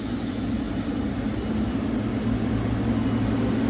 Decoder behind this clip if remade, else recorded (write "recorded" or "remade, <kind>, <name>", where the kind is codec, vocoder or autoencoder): recorded